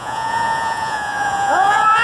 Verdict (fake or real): fake